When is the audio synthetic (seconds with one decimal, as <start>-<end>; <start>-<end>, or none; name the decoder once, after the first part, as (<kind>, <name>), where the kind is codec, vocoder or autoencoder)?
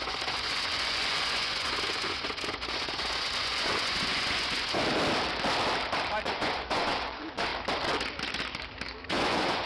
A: 0.0-4.8 (vocoder, Vocos); 6.2-7.5; 9.1-9.7